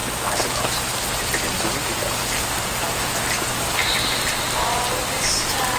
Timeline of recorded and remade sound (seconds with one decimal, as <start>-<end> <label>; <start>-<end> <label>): 0.0-5.8 recorded